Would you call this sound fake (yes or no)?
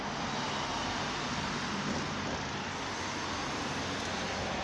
no